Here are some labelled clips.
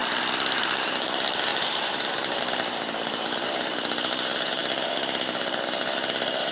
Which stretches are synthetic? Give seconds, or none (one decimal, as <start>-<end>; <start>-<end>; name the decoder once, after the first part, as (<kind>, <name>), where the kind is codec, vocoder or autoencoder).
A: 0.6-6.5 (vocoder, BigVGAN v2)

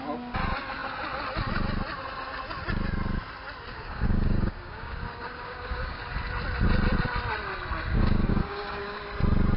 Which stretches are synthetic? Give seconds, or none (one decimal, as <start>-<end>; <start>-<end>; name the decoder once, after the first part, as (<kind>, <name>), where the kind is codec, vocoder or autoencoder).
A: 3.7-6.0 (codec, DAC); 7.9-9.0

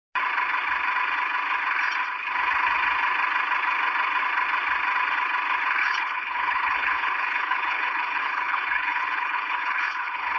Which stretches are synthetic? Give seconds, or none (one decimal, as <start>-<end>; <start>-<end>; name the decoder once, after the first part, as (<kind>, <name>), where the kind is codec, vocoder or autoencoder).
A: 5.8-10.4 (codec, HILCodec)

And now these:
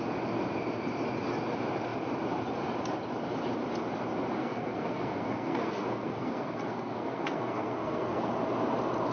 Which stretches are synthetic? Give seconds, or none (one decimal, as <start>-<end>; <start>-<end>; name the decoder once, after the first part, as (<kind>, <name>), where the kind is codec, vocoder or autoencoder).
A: 4.4-8.3 (codec, SNAC)

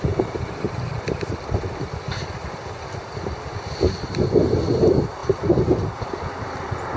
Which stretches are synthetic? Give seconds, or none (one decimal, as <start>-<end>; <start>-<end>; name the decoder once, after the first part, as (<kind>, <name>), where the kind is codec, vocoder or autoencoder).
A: none

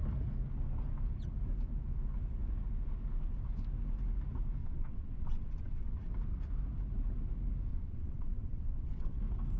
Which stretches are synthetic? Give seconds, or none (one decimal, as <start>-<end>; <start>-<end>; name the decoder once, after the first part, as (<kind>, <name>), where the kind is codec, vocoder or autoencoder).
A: 4.6-6.1 (vocoder, WaveNeXt); 7.7-9.2

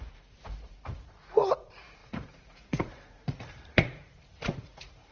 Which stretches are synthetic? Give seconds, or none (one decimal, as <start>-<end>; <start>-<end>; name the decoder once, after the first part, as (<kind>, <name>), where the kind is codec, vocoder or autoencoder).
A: 0.0-5.1 (vocoder, Vocos)

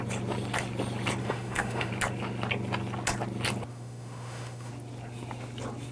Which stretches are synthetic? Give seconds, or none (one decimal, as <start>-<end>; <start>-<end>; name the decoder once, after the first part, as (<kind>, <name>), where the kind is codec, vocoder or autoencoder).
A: 1.2-1.9 (autoencoder, DAC-VAE); 3.7-4.7